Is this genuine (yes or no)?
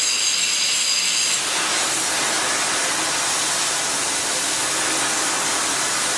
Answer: yes